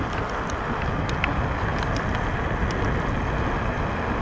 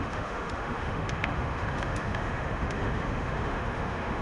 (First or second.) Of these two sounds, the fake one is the second